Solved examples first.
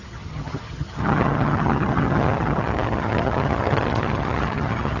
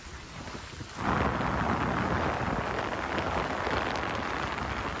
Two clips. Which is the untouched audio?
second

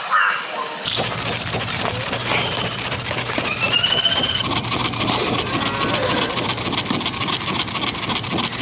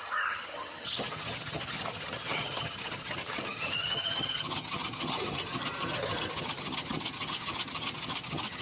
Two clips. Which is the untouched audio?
first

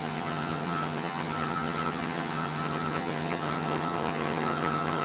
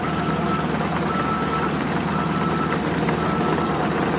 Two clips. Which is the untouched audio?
second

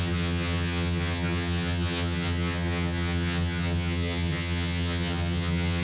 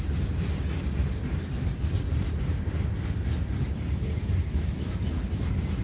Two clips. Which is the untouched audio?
second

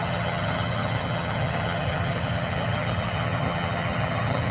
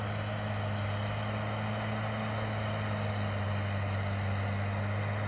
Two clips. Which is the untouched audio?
second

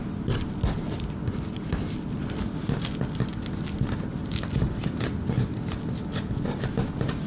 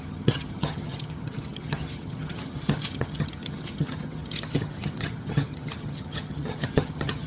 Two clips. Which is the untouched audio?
first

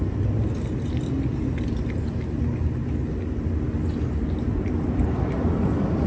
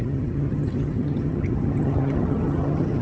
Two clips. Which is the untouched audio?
first